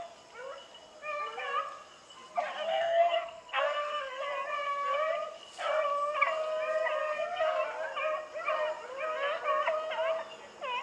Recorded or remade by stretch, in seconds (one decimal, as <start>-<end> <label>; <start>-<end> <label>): 0.0-2.7 recorded; 2.7-4.2 remade; 4.2-7.0 recorded; 7.0-7.6 remade; 7.6-10.8 recorded